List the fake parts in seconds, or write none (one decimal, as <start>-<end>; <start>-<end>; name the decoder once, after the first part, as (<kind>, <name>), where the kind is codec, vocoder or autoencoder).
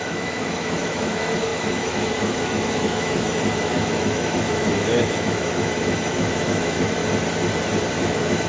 0.0-7.0 (autoencoder, DAC-VAE); 8.0-8.5